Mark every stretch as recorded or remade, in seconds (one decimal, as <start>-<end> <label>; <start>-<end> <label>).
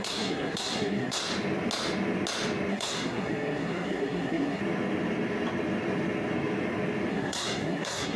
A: 0.0-1.2 remade; 1.2-2.7 recorded; 2.7-4.6 remade; 4.6-7.1 recorded; 7.1-8.2 remade